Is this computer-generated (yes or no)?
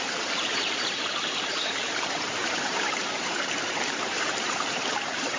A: yes